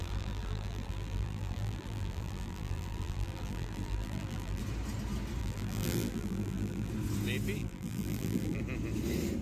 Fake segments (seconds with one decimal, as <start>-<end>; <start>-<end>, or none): 0.0-4.6; 5.4-6.9; 7.6-8.6